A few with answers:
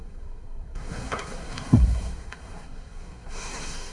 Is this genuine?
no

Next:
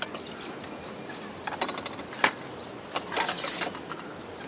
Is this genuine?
yes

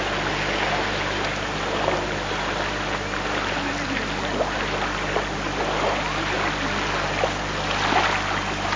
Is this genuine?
yes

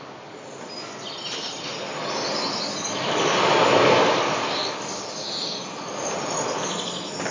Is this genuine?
yes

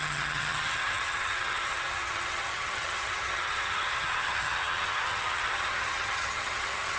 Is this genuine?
no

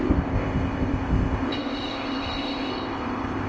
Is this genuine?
no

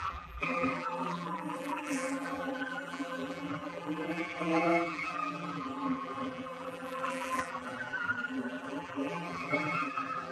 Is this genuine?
no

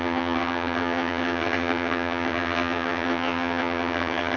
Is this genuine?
no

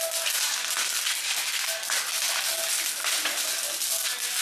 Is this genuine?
yes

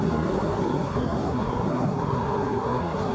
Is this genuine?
no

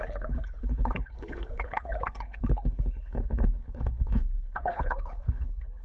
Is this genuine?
no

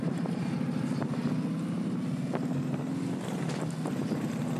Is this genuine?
yes